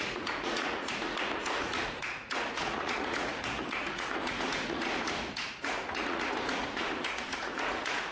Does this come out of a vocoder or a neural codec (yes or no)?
yes